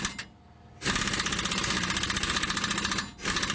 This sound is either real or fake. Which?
real